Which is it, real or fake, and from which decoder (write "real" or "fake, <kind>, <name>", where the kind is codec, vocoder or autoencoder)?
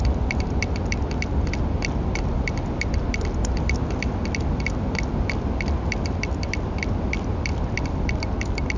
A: real